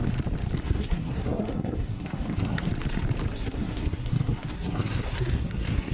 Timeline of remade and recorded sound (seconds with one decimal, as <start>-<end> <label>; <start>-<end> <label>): 0.0-0.6 recorded; 0.6-2.7 remade; 2.7-3.3 recorded; 3.3-5.9 remade